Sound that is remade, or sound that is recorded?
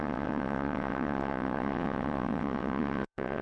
remade